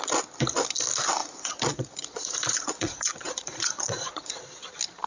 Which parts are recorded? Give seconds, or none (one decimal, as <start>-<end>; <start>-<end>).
0.0-1.2; 4.3-5.1